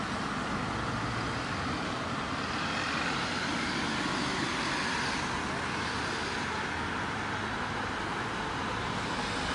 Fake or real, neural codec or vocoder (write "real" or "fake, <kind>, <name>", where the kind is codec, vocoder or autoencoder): real